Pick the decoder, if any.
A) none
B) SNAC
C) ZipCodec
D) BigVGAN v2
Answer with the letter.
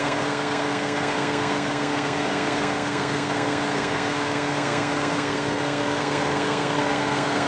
B